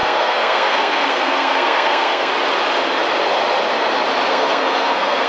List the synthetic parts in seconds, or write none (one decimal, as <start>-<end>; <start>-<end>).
0.0-2.3; 4.3-5.3